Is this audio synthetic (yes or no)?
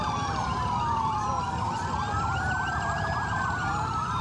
yes